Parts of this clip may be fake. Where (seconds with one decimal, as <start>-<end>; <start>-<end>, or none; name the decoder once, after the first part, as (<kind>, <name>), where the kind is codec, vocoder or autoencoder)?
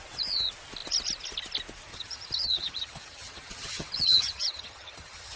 1.9-5.4 (vocoder, HiFi-GAN)